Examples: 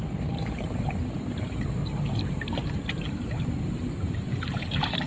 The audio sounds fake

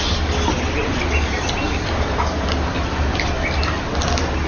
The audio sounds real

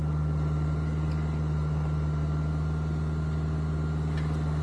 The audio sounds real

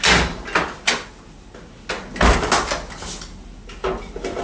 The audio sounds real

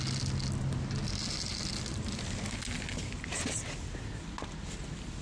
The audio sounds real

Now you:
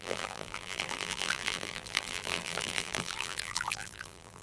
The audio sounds fake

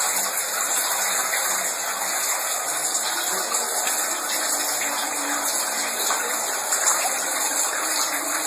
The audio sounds real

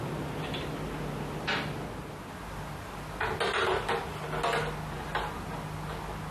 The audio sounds real